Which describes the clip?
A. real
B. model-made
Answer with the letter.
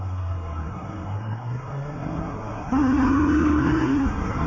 B